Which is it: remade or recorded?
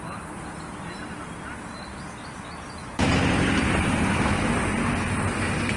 recorded